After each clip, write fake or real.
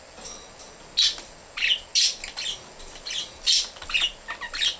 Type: real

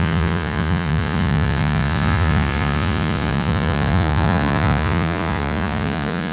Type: fake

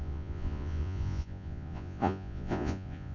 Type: fake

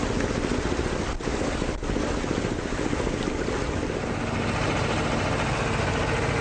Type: real